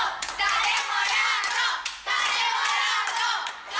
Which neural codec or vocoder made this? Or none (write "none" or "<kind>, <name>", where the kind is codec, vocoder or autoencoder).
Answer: vocoder, Vocos